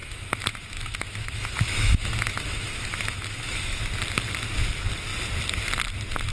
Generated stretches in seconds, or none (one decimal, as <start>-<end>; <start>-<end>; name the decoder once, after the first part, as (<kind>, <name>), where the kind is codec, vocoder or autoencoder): 0.0-3.8 (autoencoder, DAC-VAE)